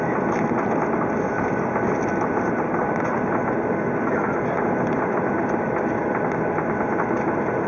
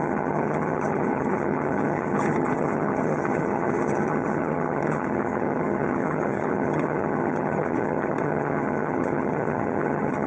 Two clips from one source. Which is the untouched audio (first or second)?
first